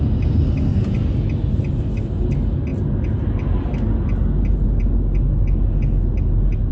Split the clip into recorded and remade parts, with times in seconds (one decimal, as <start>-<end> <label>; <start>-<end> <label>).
0.0-6.7 recorded